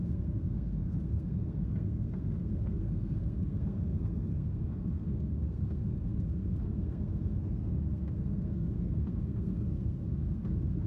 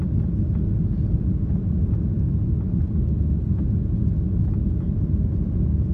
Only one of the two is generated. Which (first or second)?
first